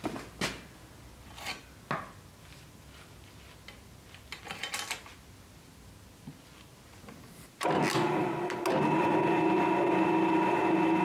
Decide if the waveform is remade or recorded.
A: recorded